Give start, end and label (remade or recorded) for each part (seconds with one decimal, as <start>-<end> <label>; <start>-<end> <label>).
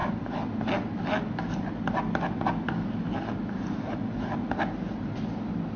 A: 0.0-5.8 recorded